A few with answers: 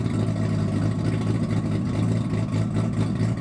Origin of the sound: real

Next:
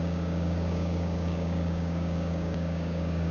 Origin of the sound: fake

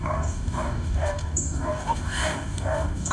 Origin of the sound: fake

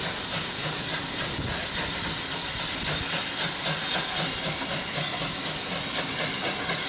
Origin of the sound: real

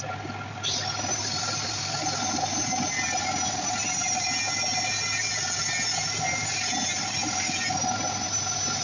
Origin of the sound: real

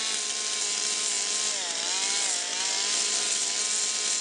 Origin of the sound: real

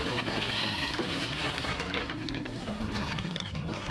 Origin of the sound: fake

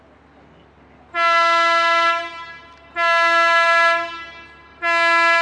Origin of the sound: real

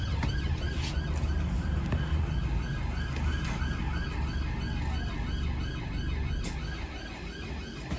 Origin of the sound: real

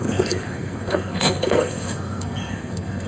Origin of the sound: fake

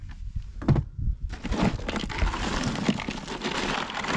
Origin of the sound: real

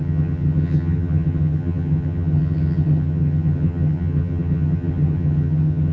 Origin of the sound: fake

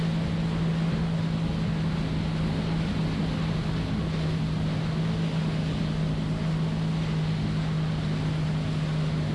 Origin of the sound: real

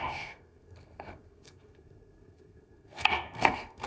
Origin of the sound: fake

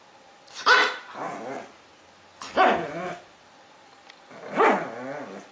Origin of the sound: real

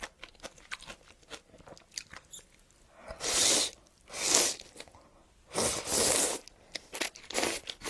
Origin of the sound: real